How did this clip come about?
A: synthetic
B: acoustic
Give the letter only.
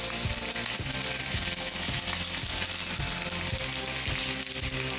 B